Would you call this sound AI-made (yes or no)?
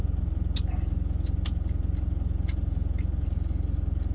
no